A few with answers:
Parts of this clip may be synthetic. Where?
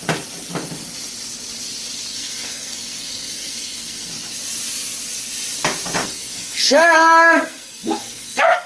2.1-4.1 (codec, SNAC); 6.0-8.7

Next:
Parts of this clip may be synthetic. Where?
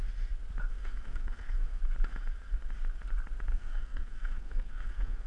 0.7-1.8 (codec, SNAC); 3.5-5.3